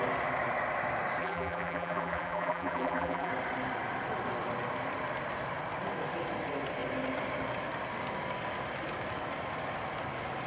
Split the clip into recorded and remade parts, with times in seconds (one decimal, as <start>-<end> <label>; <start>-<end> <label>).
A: 0.0-1.2 recorded; 1.2-3.3 remade; 3.3-10.5 recorded